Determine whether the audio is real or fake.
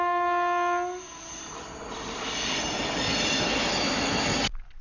real